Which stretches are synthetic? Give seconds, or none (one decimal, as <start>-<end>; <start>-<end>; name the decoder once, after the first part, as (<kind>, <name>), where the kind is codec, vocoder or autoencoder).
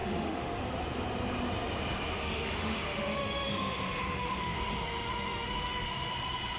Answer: 0.0-0.6 (autoencoder, DAC-VAE); 2.1-6.1